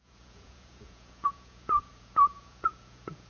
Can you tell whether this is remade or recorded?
remade